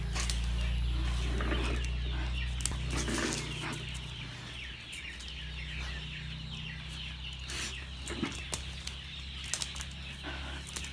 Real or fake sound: real